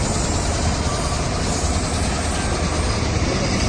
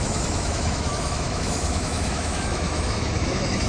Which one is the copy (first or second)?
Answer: second